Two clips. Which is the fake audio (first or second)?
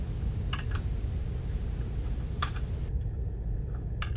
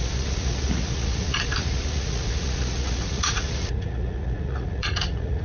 second